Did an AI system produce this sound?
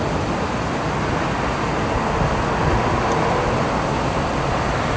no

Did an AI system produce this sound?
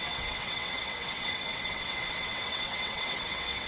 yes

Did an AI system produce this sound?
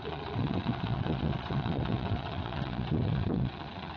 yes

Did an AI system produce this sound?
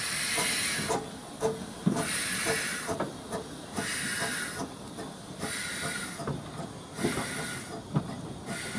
no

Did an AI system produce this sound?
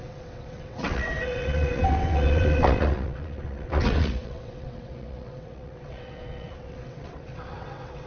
yes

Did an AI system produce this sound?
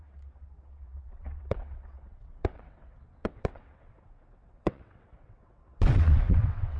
yes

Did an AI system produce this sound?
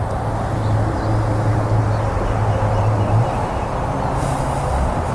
no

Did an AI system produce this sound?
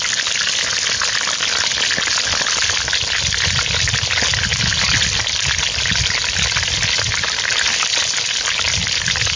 no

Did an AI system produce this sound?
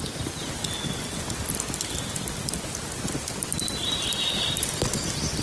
no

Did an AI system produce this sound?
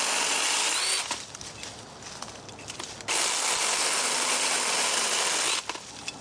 no